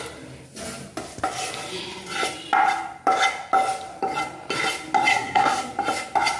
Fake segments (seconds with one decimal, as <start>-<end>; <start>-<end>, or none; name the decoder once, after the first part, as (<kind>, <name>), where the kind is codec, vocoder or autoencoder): 5.1-5.6 (codec, SNAC)